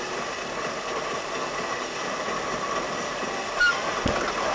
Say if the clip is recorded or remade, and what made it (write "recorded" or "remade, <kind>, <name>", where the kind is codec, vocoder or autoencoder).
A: recorded